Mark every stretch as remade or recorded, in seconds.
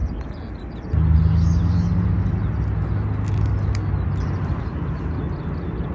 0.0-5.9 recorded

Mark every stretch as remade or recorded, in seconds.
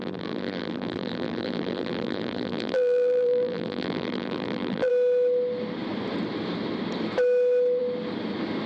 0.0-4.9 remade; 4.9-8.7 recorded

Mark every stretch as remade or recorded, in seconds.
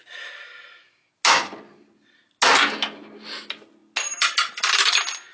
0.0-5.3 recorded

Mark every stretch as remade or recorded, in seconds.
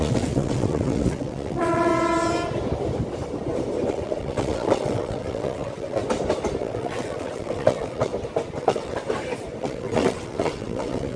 0.0-1.9 remade; 1.9-3.9 recorded; 3.9-6.0 remade; 6.0-6.6 recorded; 6.6-8.1 remade; 8.1-8.6 recorded; 8.6-9.0 remade; 9.0-9.6 recorded; 9.6-11.2 remade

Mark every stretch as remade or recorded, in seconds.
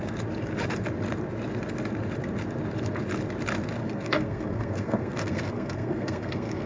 0.0-3.8 recorded; 3.8-6.7 remade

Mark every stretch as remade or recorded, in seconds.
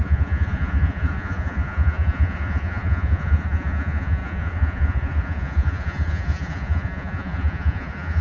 0.0-8.2 remade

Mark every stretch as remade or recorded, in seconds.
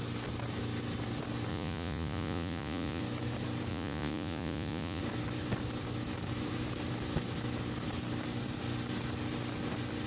0.0-1.5 recorded; 1.5-3.0 remade; 3.0-3.7 recorded; 3.7-5.0 remade; 5.0-10.1 recorded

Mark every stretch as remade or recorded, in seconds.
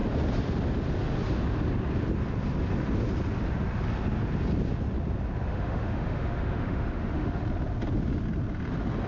0.0-5.5 recorded; 5.5-7.4 remade; 7.4-9.1 recorded